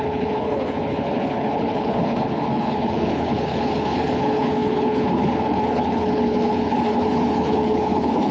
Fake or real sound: fake